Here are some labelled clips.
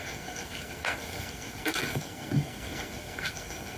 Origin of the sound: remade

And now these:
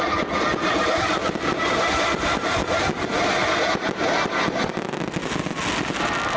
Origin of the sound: recorded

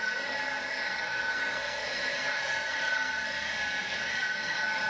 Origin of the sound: remade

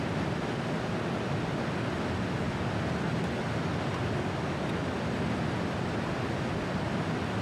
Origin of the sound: recorded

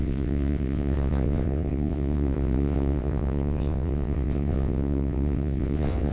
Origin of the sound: remade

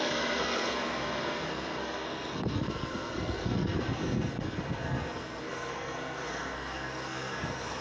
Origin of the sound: remade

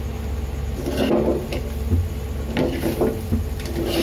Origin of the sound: recorded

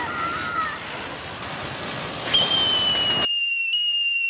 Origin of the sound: recorded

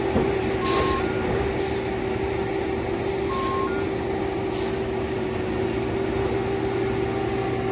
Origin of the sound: recorded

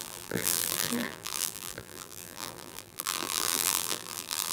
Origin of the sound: remade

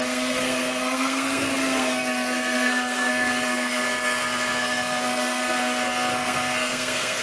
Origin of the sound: remade